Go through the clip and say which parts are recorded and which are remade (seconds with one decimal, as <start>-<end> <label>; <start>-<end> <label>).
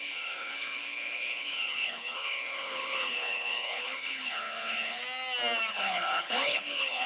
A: 0.0-5.0 remade; 5.0-5.7 recorded; 5.7-7.1 remade